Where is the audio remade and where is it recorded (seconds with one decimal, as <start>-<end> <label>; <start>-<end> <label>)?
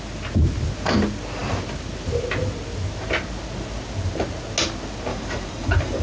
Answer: 0.0-5.1 recorded; 5.1-6.0 remade